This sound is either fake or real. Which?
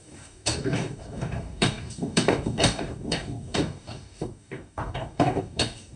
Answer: fake